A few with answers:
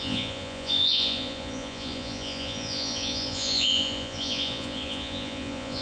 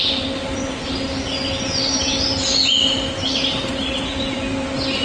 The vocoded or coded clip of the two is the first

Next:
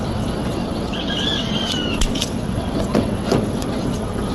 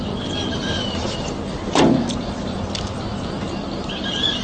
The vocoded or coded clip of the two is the first